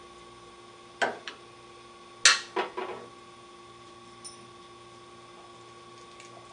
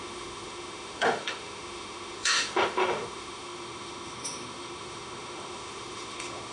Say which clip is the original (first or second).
first